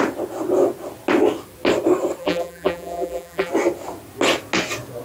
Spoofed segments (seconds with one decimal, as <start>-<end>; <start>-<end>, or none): 2.2-3.5